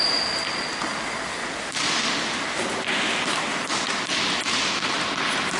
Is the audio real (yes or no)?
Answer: yes